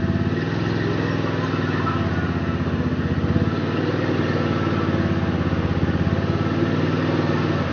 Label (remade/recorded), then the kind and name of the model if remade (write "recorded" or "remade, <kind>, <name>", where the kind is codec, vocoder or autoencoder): recorded